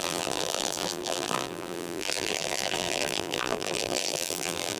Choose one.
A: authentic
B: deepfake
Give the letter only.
B